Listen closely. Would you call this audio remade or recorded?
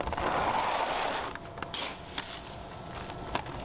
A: recorded